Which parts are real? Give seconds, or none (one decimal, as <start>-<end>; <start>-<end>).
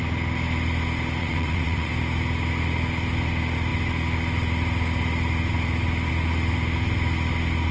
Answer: 0.0-1.2; 1.9-7.7